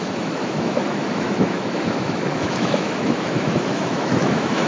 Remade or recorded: remade